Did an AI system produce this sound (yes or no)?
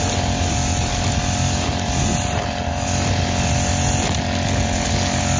no